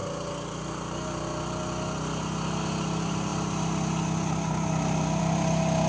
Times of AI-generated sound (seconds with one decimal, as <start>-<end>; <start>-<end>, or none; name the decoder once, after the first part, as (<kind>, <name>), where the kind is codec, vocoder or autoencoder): none